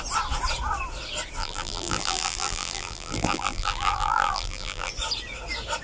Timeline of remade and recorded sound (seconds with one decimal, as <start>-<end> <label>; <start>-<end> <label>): 0.0-1.4 recorded; 1.4-4.9 remade; 4.9-5.8 recorded